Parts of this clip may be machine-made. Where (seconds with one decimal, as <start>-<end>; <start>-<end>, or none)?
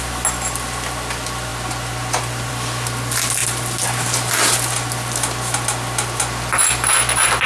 none